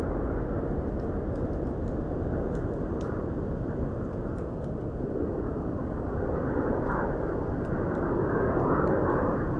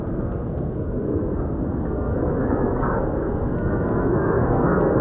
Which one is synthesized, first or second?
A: second